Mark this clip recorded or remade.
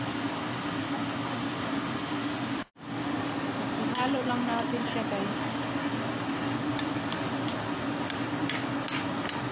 recorded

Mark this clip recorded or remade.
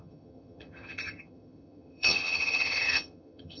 remade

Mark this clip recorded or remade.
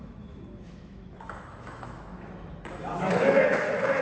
remade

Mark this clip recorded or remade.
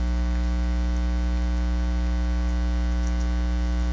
recorded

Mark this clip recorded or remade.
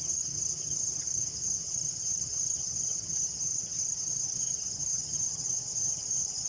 remade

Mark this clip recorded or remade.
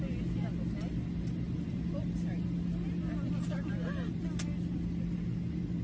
recorded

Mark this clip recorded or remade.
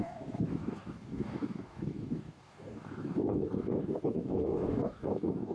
remade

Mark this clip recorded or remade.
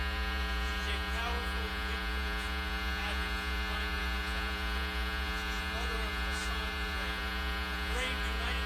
remade